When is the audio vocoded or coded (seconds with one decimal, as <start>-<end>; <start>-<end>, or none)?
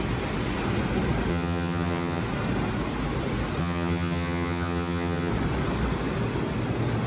1.3-2.2; 3.6-5.3